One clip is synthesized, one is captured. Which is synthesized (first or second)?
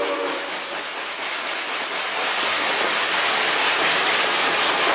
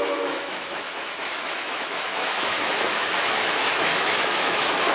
second